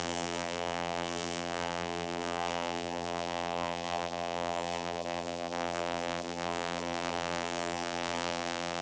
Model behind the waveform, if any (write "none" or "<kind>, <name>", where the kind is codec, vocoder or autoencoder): vocoder, BigVGAN v2